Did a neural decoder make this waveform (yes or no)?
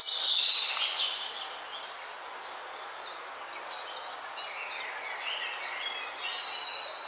no